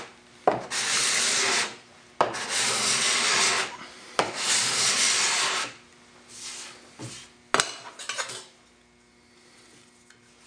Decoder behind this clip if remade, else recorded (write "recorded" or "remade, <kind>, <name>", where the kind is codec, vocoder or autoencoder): recorded